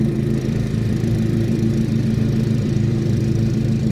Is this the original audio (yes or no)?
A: no